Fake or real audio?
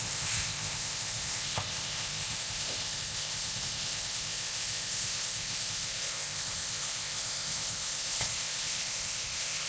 fake